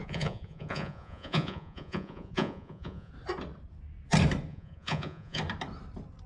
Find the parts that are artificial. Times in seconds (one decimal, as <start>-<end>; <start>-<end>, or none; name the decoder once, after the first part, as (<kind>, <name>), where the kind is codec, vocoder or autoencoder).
0.0-3.1 (vocoder, Vocos); 4.5-5.4